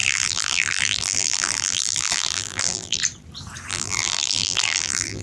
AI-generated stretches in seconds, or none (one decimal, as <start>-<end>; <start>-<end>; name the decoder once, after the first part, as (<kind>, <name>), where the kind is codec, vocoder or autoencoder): 0.0-3.0 (vocoder, BigVGAN v2); 3.7-5.2